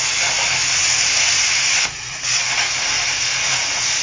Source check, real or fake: real